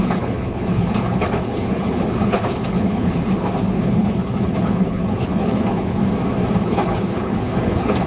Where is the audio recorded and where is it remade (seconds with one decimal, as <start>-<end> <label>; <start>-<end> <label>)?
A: 0.0-6.0 remade; 6.0-6.6 recorded; 6.6-8.1 remade